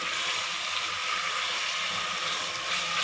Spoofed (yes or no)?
no